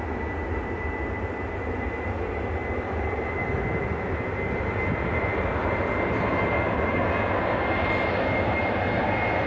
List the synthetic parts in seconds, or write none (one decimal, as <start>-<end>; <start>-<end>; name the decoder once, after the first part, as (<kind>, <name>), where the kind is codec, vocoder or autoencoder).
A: 2.6-3.2 (vocoder, BigVGAN v2)